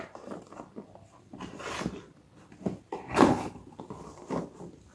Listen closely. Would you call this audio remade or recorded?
recorded